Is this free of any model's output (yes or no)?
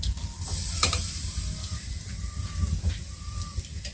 yes